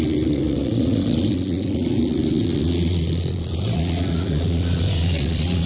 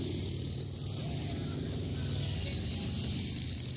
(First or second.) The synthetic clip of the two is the first